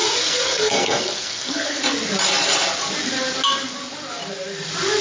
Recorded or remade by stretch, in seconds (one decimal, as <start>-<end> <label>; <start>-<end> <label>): 0.0-1.8 remade; 1.8-5.0 recorded